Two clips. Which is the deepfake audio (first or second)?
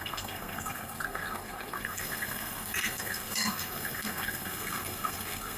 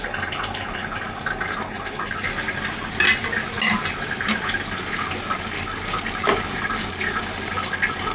first